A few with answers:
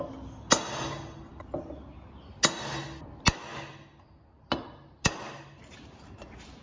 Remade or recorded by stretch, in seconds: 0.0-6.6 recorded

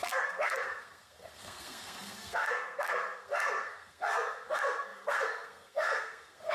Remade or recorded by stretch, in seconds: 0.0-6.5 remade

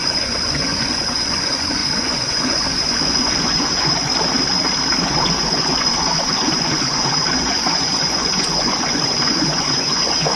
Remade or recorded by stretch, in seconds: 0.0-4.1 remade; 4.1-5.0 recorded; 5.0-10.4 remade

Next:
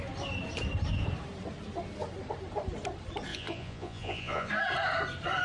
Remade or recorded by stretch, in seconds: 0.0-3.3 recorded; 3.3-4.5 remade; 4.5-5.4 recorded

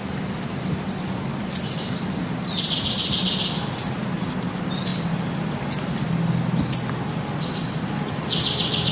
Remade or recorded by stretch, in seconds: 0.0-8.9 recorded

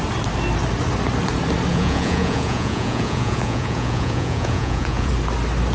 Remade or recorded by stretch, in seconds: 0.0-1.7 recorded; 1.7-5.1 remade; 5.1-5.7 recorded